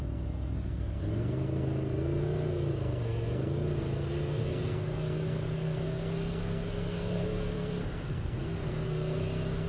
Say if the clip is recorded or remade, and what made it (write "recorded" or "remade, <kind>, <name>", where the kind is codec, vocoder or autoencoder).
remade, codec, SNAC